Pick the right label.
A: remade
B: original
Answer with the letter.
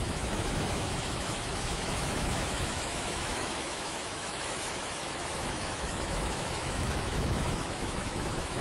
A